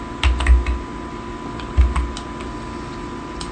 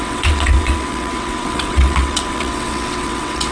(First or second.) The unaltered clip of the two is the first